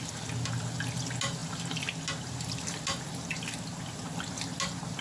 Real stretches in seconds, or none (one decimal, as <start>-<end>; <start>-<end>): 0.0-5.0